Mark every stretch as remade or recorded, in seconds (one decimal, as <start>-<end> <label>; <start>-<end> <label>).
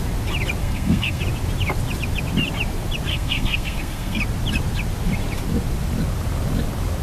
0.0-0.6 recorded; 0.6-1.2 remade; 1.2-3.1 recorded; 3.1-4.2 remade; 4.2-7.0 recorded